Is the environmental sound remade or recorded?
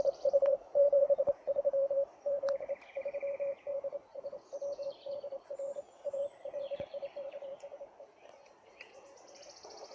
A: remade